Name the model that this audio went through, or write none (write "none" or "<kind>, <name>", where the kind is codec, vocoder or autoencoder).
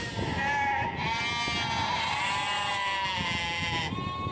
none